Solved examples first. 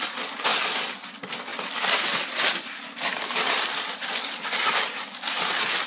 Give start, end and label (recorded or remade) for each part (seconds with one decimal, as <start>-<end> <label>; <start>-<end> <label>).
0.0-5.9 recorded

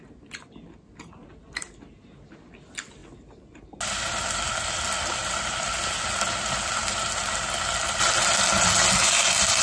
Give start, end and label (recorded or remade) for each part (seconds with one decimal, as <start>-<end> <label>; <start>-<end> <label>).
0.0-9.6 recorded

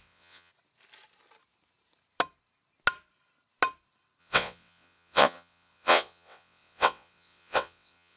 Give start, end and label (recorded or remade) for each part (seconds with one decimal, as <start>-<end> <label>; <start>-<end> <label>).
0.0-0.5 remade; 0.5-4.2 recorded; 4.2-8.2 remade

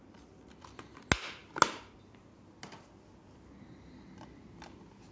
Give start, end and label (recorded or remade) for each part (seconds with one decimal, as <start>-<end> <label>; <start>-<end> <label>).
0.0-5.1 recorded

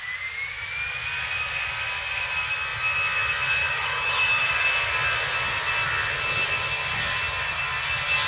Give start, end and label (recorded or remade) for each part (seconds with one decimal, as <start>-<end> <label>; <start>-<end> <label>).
0.0-3.6 recorded; 3.6-4.5 remade; 4.5-8.3 recorded

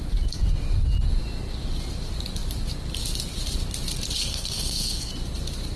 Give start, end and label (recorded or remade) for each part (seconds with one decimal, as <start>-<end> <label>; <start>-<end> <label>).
0.0-4.2 recorded; 4.2-5.1 remade; 5.1-5.8 recorded

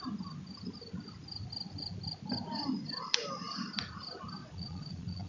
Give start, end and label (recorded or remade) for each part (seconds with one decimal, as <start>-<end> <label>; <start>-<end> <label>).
0.0-4.4 recorded; 4.4-5.3 remade

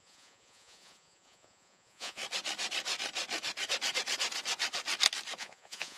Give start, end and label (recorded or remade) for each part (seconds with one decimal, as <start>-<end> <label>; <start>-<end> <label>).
0.0-2.2 remade; 2.2-5.4 recorded; 5.4-6.0 remade